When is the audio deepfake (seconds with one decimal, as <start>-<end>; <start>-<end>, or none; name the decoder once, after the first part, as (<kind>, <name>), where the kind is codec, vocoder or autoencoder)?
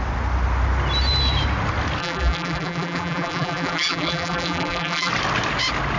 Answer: 2.0-5.1 (vocoder, BigVGAN v2)